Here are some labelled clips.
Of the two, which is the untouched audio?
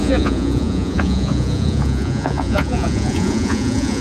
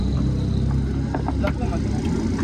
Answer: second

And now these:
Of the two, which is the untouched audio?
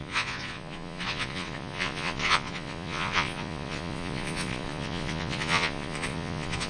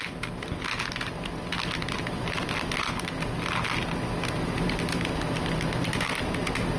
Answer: second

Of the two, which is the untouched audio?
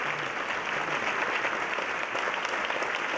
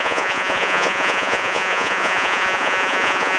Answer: first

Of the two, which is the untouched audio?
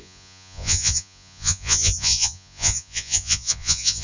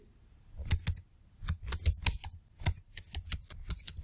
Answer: second